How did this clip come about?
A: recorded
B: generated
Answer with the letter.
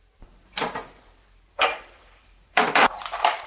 B